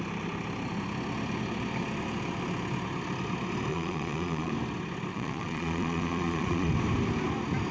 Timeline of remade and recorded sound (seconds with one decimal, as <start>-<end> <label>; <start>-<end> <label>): 0.0-3.7 recorded; 3.7-4.5 remade; 4.5-5.1 recorded; 5.1-6.7 remade; 6.7-7.7 recorded